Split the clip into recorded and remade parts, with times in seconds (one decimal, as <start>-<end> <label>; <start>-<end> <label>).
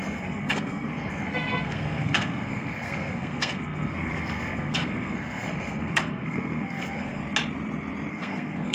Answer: 0.0-7.2 remade; 7.2-8.1 recorded; 8.1-8.7 remade